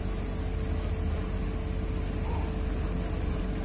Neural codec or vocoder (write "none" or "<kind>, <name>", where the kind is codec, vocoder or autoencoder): none